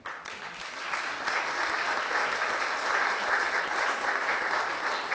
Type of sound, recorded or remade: recorded